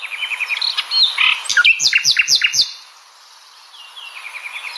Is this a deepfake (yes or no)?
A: no